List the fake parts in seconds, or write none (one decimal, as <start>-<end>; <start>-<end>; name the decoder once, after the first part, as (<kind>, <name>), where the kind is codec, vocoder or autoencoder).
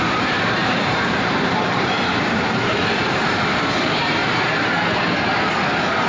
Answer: 0.0-4.2 (vocoder, BigVGAN v2)